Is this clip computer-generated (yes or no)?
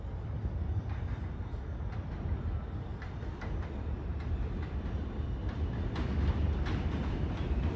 no